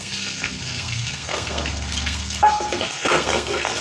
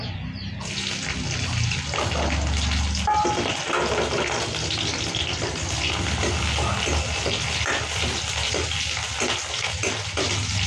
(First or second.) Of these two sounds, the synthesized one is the first